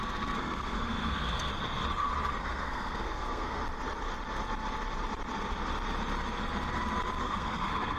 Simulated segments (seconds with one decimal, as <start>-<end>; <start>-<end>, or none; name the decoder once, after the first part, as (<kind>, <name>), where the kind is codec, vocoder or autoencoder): 0.0-1.5 (codec, SNAC); 2.4-3.6; 7.2-8.0